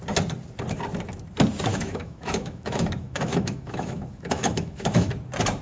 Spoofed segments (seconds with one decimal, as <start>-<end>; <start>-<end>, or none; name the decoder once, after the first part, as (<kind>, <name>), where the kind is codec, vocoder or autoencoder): 1.7-5.1 (autoencoder, DAC-VAE)